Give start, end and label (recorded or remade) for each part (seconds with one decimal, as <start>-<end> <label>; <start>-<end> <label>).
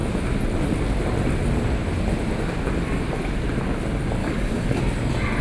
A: 0.0-4.2 recorded; 4.2-4.8 remade; 4.8-5.4 recorded